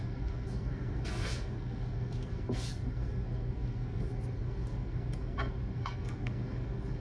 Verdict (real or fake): fake